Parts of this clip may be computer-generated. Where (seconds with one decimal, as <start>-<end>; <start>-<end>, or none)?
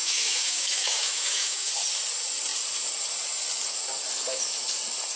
0.0-1.7